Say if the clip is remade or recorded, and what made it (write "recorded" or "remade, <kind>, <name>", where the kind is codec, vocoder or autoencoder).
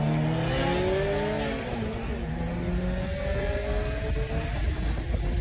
recorded